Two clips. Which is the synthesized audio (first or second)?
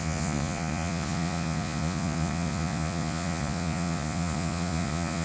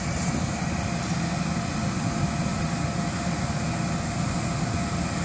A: first